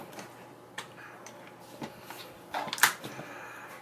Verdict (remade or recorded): recorded